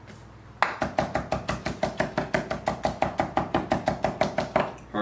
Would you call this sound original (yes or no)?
yes